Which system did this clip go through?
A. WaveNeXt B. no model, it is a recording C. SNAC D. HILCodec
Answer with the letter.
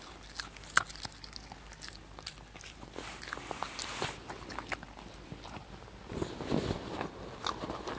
B